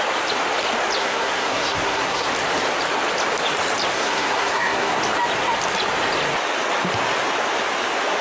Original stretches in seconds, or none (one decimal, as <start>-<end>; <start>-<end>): 0.0-1.0; 2.3-3.9; 5.0-8.2